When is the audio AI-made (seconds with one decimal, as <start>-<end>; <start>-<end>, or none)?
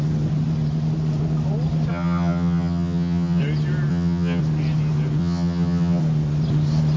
1.9-3.4; 3.9-4.4; 5.2-6.0